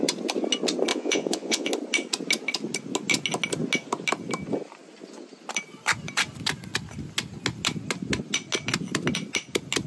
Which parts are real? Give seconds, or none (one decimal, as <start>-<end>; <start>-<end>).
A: 0.0-0.9; 1.7-9.9